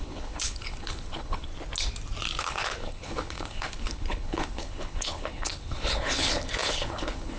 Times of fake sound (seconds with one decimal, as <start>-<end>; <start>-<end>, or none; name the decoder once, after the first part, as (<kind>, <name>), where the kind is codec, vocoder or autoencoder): 0.0-1.5 (codec, HILCodec); 2.4-7.4